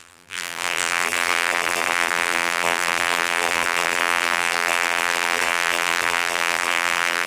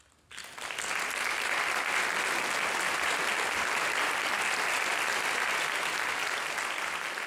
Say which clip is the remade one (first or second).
first